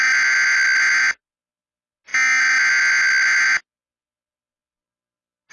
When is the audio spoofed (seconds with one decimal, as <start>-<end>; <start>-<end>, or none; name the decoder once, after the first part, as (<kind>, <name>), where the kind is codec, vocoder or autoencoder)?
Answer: none